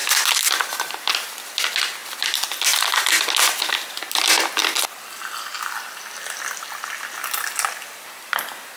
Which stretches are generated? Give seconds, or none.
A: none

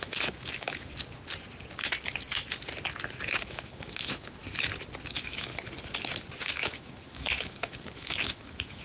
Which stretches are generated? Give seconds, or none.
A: 0.0-0.9 (autoencoder, DAC-VAE); 3.4-4.4; 5.1-5.5; 6.4-8.8

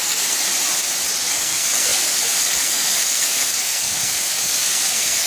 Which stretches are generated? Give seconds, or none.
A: 0.0-0.5 (codec, SNAC); 1.3-5.3

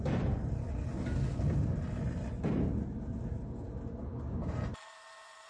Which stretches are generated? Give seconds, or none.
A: 0.0-0.9 (vocoder, BigVGAN v2); 4.2-5.5

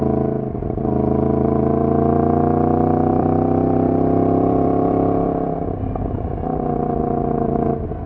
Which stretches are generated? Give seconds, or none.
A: 3.1-7.0 (vocoder, BigVGAN v2)

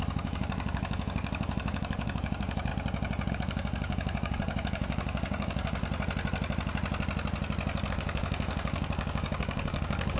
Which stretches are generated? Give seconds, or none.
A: 0.0-2.7 (codec, DAC); 3.3-5.8; 7.9-10.2